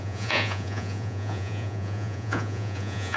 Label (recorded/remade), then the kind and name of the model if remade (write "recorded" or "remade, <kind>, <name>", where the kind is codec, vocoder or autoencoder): remade, vocoder, Vocos